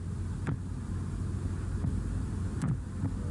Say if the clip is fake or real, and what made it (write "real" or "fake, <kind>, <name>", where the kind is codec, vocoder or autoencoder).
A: real